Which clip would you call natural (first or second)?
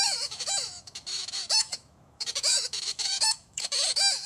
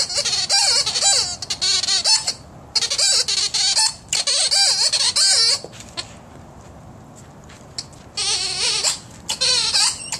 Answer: second